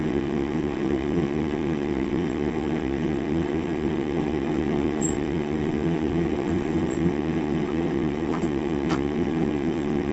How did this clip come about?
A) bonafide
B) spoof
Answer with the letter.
B